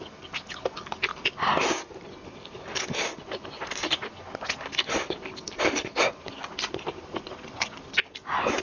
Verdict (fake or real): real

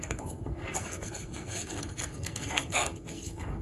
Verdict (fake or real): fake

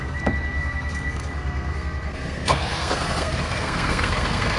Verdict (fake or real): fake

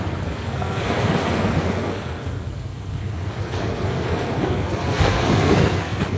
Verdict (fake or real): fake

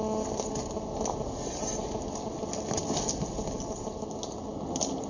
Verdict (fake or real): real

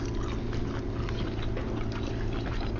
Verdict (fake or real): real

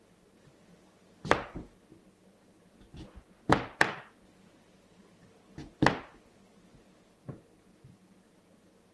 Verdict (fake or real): real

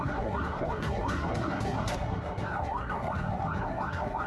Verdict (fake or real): fake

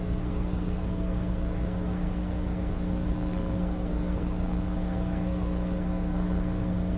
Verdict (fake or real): fake